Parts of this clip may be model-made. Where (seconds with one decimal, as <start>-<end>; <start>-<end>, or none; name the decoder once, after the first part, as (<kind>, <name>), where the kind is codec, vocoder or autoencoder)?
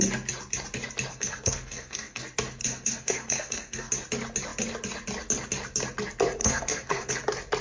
1.1-2.2 (codec, SNAC); 2.6-3.9; 6.4-7.1